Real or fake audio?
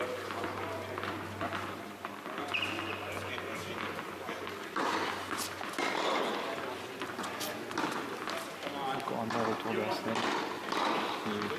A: real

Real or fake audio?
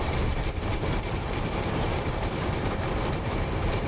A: fake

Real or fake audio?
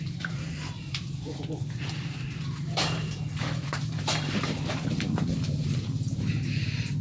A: fake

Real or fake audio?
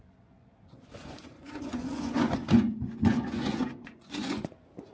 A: fake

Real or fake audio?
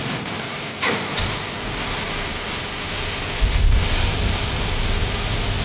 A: real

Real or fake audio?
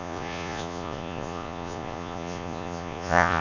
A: fake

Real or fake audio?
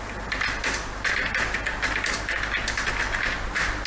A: real